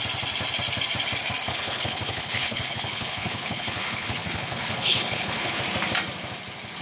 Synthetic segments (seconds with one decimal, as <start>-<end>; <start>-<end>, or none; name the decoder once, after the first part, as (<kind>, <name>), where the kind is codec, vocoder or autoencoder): 1.5-5.6 (codec, HILCodec)